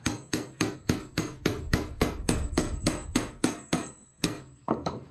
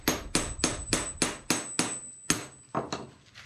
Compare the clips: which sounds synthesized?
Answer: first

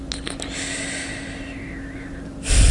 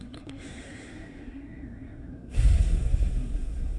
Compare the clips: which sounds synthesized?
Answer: second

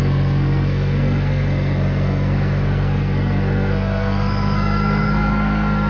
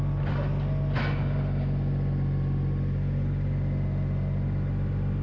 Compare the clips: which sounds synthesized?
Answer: first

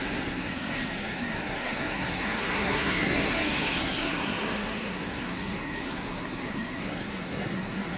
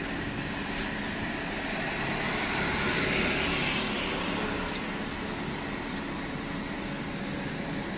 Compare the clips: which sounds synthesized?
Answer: first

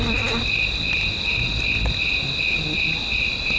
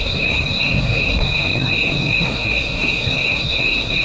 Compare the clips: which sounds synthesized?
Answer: second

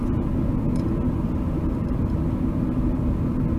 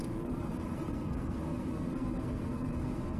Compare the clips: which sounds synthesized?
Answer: second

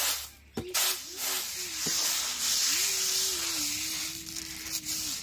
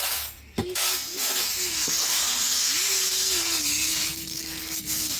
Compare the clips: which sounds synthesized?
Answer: second